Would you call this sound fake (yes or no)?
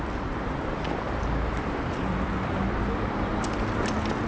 yes